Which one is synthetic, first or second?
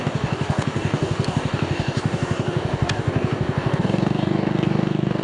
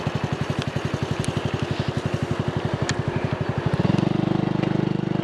first